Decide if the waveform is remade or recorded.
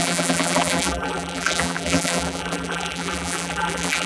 remade